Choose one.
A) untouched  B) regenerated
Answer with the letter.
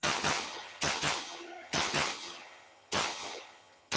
B